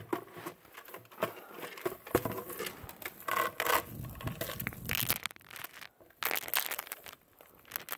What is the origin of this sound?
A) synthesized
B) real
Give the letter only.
B